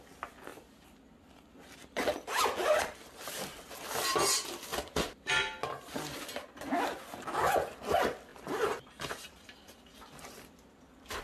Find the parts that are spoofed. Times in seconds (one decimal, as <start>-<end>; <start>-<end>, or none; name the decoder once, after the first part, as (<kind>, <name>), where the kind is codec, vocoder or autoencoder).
4.7-5.3 (vocoder, BigVGAN v2); 8.3-11.2

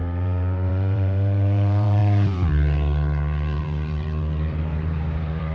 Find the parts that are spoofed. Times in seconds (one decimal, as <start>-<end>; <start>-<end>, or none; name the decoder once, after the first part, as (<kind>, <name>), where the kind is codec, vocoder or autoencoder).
0.0-5.5 (vocoder, BigVGAN v2)

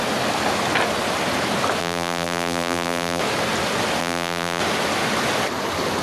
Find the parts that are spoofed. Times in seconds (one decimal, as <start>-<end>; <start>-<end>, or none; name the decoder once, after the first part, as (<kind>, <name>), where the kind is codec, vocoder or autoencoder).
1.8-3.2 (vocoder, BigVGAN v2); 4.0-4.6

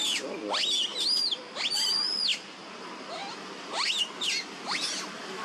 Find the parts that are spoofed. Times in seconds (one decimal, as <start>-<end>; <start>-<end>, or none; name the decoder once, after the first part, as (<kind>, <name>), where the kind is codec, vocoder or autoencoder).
2.3-2.8 (vocoder, BigVGAN v2); 3.2-4.0

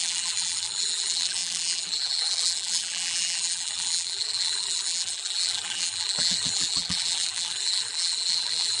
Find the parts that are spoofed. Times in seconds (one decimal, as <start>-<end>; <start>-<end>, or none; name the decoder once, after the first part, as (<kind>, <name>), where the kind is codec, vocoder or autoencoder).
0.0-8.8 (vocoder, BigVGAN v2)